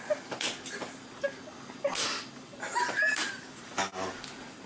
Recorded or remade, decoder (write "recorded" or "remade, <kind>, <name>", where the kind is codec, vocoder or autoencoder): recorded